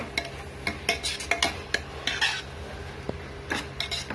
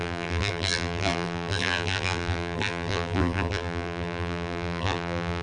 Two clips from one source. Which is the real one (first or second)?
first